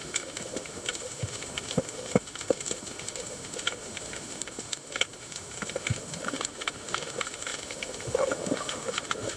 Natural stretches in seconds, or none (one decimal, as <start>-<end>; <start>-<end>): none